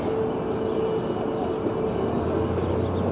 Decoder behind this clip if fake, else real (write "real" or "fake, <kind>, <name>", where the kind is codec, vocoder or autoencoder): real